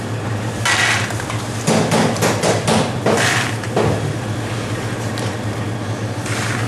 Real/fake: real